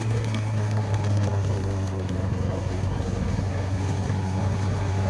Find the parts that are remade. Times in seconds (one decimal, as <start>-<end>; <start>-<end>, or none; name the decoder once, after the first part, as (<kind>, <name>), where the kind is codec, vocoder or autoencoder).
0.0-5.1 (codec, SNAC)